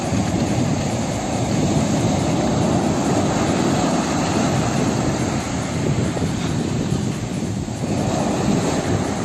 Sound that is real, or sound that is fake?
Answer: real